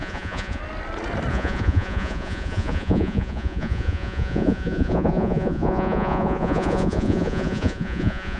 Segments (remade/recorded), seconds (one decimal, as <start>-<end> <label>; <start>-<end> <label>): 0.0-0.6 remade; 0.6-1.3 recorded; 1.3-8.4 remade